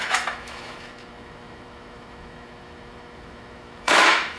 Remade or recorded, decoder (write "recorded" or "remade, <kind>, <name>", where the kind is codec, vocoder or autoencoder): remade, autoencoder, DAC-VAE